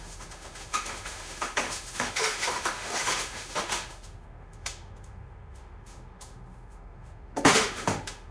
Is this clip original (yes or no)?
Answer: no